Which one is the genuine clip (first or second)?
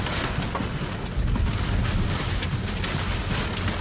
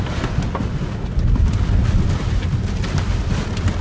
first